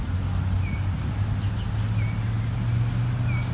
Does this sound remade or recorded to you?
recorded